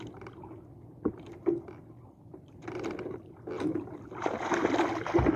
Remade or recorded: recorded